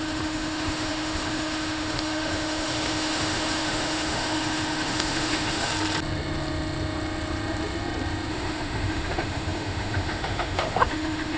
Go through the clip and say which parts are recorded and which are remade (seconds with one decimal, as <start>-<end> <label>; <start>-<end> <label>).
0.0-5.7 remade; 5.7-8.3 recorded; 8.3-11.4 remade